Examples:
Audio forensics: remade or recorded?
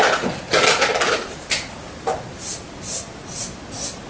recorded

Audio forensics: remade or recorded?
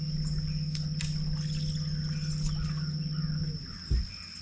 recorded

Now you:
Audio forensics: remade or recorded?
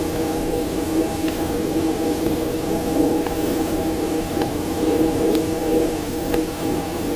remade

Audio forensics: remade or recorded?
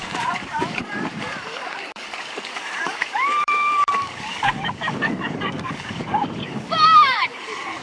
remade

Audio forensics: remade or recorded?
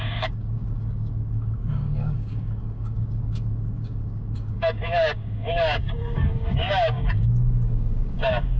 remade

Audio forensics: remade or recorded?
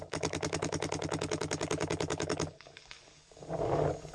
remade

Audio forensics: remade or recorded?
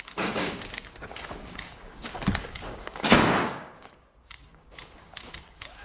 remade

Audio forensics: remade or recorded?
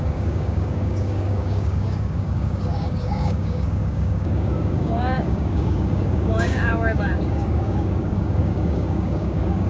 remade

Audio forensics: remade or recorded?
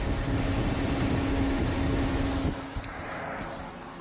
recorded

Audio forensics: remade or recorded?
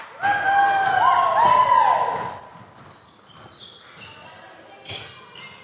recorded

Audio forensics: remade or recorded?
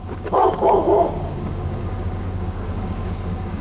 remade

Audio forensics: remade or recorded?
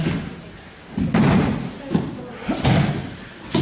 recorded